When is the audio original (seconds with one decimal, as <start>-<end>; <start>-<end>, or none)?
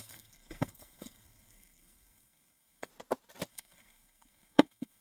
2.9-3.5